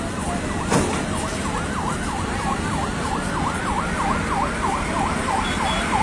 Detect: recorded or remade recorded